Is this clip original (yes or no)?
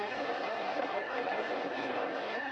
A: no